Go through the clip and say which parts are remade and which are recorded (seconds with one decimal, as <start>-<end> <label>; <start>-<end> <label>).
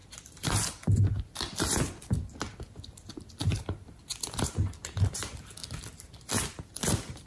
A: 0.0-7.3 remade